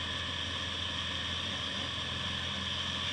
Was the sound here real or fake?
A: real